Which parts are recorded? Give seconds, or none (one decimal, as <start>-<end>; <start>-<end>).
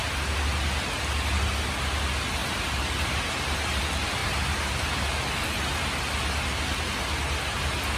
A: 0.0-2.4; 3.8-4.2; 4.9-8.0